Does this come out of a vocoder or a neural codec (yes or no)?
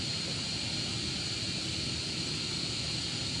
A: no